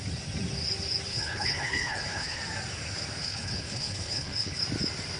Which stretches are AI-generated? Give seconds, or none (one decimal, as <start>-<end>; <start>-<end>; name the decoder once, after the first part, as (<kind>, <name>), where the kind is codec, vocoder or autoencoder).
1.1-2.4 (codec, HILCodec); 3.2-4.6